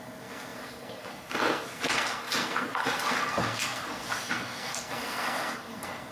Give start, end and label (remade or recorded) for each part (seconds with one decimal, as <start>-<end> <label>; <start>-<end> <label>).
0.0-6.1 remade